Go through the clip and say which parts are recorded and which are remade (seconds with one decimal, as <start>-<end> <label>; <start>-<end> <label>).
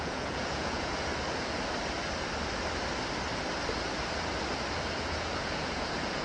0.0-1.1 remade; 1.1-4.8 recorded; 4.8-6.2 remade